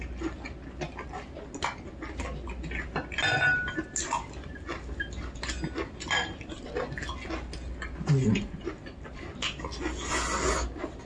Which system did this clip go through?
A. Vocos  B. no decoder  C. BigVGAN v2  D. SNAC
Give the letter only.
B